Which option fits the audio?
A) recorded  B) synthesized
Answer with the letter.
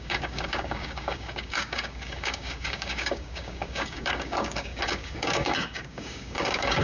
B